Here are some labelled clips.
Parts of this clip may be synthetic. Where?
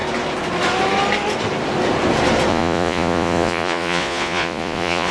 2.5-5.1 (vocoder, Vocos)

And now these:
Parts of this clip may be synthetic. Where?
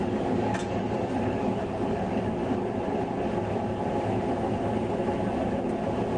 0.0-2.4 (codec, DAC)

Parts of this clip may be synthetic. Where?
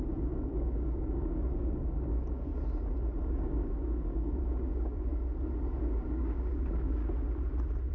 0.0-2.5 (codec, DAC); 3.3-5.1; 5.8-7.0